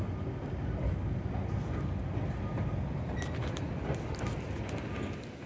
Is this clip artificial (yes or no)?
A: no